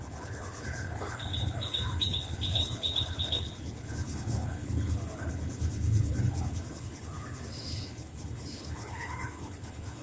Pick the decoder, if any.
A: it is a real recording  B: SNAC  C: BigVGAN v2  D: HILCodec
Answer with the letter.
D